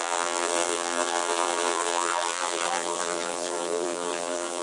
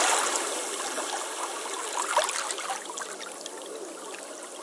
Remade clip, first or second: first